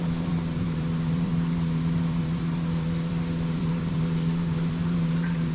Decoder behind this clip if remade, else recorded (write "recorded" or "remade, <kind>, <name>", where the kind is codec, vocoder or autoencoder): remade, vocoder, BigVGAN v2